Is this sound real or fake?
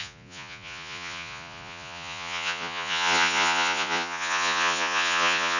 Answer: fake